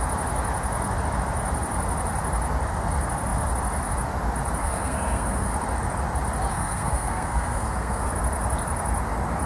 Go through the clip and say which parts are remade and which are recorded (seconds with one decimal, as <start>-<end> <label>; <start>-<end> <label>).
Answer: 0.0-4.6 recorded; 4.6-5.5 remade; 5.5-6.5 recorded; 6.5-8.1 remade; 8.1-9.5 recorded

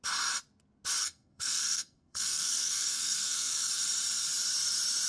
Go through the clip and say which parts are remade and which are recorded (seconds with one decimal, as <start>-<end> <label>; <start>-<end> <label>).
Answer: 0.0-1.0 recorded; 1.0-3.7 remade; 3.7-5.1 recorded

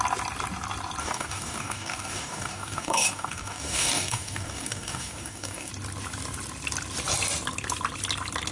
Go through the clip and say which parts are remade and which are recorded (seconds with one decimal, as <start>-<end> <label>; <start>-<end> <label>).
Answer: 0.0-1.0 recorded; 1.0-5.7 remade; 5.7-8.5 recorded

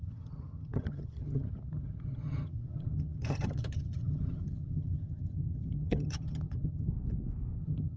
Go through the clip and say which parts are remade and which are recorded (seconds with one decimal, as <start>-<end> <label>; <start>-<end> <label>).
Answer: 0.0-6.9 remade; 6.9-7.6 recorded; 7.6-8.0 remade

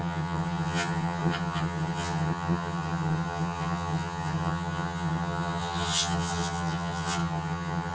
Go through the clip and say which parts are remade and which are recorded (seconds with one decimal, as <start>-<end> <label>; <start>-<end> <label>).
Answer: 0.0-7.9 remade

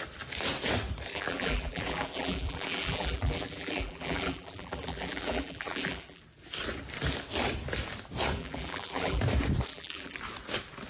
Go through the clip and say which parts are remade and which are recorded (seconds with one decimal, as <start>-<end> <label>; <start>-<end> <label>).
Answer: 0.0-1.1 recorded; 1.1-6.2 remade; 6.2-8.4 recorded; 8.4-9.2 remade; 9.2-9.7 recorded; 9.7-10.2 remade; 10.2-10.9 recorded

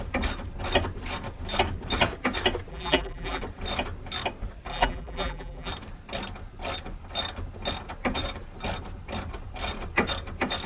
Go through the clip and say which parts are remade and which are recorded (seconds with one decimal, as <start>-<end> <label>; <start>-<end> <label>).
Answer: 0.0-2.7 recorded; 2.7-3.4 remade; 3.4-4.7 recorded; 4.7-5.7 remade; 5.7-10.7 recorded

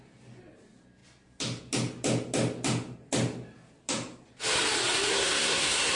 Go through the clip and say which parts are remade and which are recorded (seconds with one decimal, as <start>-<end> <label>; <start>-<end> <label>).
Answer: 0.0-5.1 recorded; 5.1-6.0 remade